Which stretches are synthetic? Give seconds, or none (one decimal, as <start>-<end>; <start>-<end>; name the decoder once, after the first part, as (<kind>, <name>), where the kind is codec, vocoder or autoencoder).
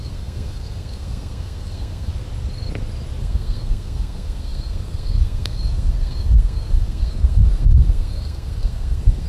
0.0-2.1 (codec, SNAC); 3.2-9.3